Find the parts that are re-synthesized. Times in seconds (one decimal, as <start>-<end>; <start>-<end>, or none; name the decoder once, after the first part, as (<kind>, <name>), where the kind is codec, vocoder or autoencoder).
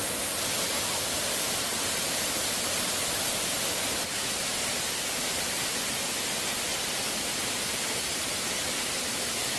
7.3-9.1 (vocoder, BigVGAN v2)